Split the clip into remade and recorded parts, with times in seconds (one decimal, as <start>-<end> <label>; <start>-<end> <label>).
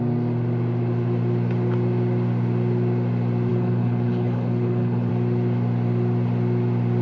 0.0-3.5 recorded; 3.5-5.1 remade; 5.1-7.0 recorded